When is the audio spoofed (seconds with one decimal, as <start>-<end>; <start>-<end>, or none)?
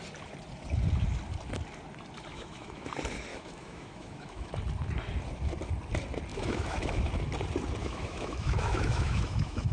2.3-2.9; 3.3-4.5; 6.3-7.0; 7.8-9.7